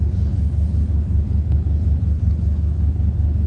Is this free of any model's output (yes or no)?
no